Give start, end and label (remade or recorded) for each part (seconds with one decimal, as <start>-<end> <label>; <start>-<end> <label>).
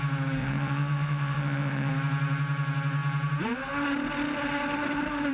0.0-0.4 recorded; 0.4-1.9 remade; 1.9-5.3 recorded